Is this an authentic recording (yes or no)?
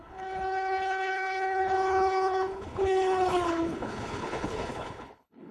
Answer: no